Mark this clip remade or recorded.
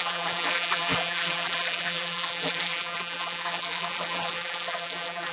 remade